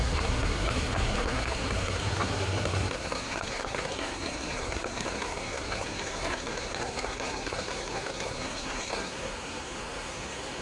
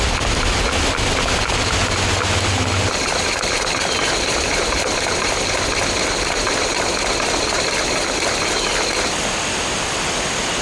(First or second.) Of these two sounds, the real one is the second